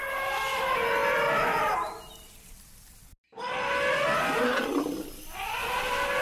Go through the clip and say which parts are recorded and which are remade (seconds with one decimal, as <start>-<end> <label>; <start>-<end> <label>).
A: 0.0-1.0 recorded; 1.0-3.4 remade; 3.4-6.2 recorded